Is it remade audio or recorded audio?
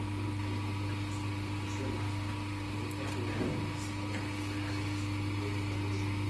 recorded